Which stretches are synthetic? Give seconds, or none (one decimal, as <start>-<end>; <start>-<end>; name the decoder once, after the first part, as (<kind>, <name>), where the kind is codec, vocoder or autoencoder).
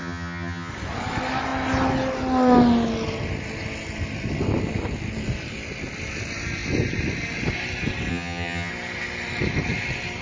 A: 0.0-0.7 (vocoder, HiFi-GAN); 8.1-8.7